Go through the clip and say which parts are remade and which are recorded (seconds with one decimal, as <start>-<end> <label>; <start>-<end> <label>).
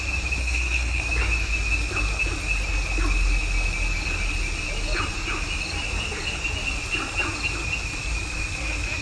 0.0-0.4 recorded; 0.4-1.0 remade; 1.0-9.0 recorded